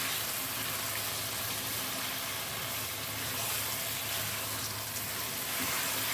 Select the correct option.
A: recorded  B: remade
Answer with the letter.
A